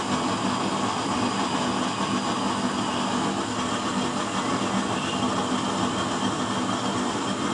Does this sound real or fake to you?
real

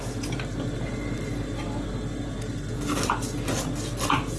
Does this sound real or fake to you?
real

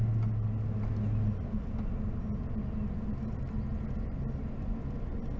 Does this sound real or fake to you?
real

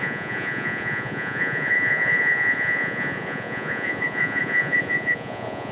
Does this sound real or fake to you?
fake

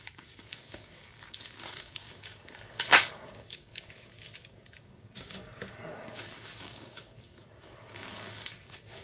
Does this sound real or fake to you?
fake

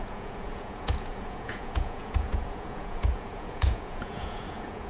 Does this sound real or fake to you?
fake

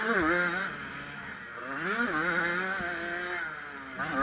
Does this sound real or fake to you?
real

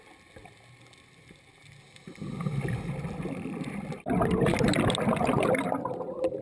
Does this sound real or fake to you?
real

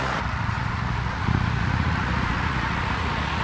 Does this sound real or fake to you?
fake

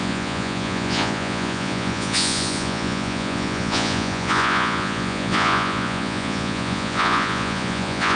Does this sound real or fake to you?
fake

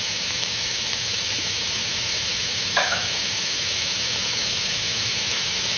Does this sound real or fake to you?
fake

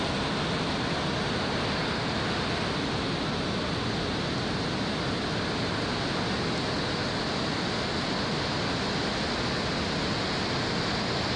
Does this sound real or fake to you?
real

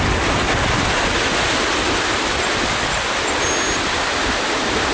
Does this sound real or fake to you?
real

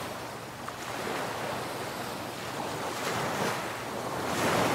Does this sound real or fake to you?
real